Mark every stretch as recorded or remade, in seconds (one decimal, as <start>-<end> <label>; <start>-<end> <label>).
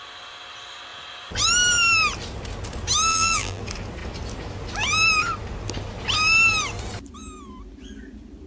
0.0-3.1 recorded; 3.1-3.6 remade; 3.6-8.5 recorded